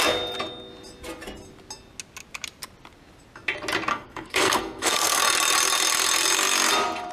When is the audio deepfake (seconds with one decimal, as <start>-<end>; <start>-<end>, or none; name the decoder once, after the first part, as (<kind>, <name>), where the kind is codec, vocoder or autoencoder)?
3.9-5.2 (codec, SNAC)